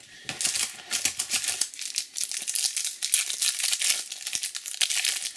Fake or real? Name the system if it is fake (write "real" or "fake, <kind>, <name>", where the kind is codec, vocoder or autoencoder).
real